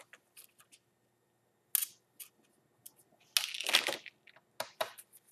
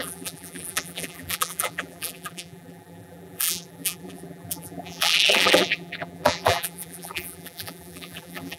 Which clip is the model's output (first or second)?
second